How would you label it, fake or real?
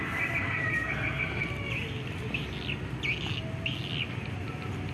real